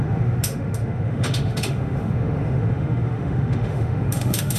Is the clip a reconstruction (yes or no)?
yes